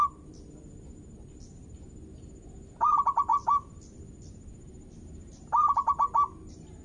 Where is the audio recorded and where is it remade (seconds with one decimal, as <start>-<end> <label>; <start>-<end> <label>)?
0.0-6.8 recorded